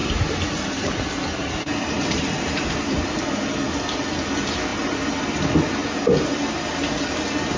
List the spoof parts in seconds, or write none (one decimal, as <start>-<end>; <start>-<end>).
0.0-3.2; 5.8-6.7